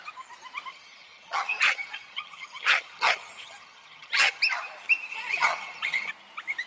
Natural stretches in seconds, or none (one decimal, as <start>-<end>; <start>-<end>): 0.0-0.7; 4.4-5.1; 6.1-6.7